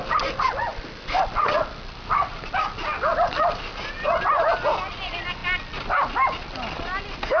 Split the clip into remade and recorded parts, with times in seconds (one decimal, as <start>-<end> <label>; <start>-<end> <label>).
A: 0.0-0.7 recorded; 0.7-1.6 remade; 1.6-7.4 recorded